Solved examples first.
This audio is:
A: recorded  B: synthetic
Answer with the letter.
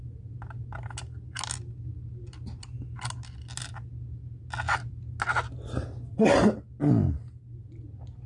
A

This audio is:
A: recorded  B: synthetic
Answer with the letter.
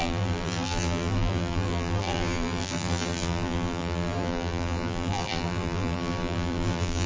B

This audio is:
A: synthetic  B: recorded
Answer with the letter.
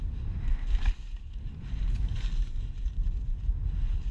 B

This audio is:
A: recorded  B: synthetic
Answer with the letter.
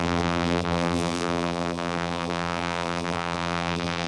B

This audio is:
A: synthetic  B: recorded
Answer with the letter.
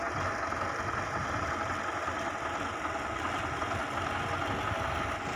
B